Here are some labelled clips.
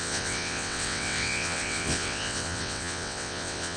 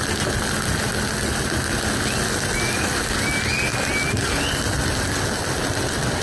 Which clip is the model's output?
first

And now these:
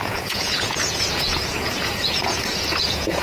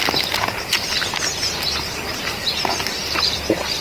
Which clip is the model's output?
first